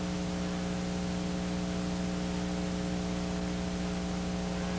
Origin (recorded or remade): recorded